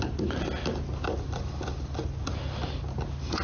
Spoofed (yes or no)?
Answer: no